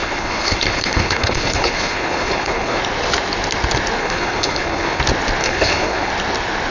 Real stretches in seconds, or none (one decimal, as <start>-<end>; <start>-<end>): 2.8-4.0; 5.0-5.4; 6.1-6.7